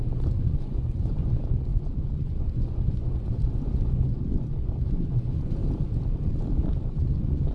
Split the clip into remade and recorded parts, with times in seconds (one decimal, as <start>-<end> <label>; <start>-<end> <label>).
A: 0.0-5.6 remade; 5.6-6.6 recorded; 6.6-7.5 remade